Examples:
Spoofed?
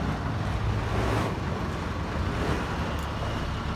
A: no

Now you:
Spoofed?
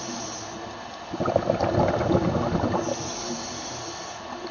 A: no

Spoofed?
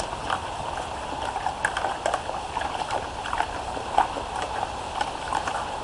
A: no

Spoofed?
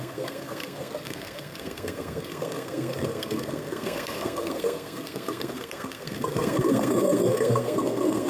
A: yes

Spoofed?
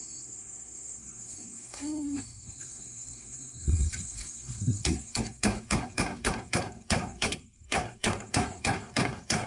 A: yes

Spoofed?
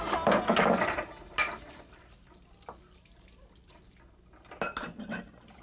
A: no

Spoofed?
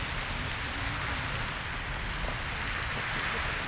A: no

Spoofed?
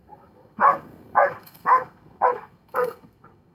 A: yes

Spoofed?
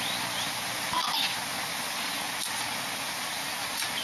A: no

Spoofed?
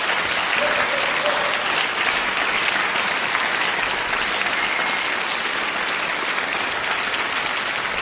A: no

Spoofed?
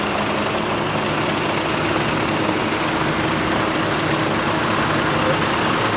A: no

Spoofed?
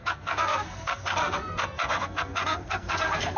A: yes